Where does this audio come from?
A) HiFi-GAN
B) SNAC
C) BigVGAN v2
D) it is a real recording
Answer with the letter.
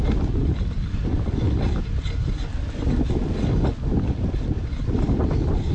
C